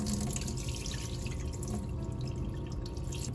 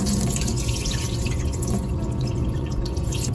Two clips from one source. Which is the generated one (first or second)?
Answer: second